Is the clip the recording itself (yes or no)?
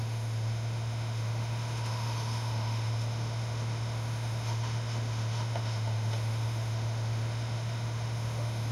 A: no